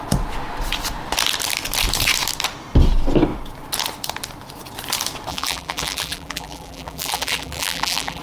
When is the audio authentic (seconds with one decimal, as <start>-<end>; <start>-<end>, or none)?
0.0-5.3